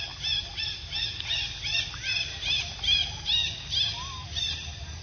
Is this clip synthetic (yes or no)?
no